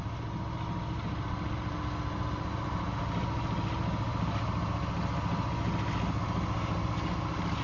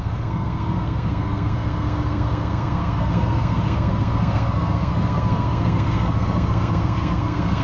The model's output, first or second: second